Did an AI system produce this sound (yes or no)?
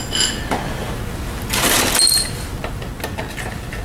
no